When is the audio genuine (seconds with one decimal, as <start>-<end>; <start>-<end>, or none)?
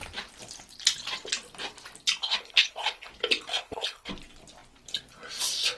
0.0-2.2; 3.1-3.5; 4.1-5.8